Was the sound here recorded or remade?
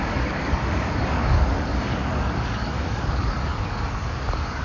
remade